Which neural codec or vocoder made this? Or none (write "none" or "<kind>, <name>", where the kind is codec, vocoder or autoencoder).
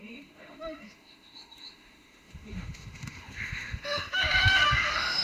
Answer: autoencoder, DAC-VAE